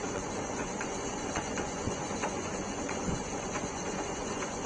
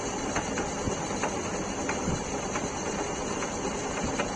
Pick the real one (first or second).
second